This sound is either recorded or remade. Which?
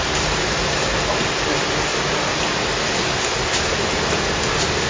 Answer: recorded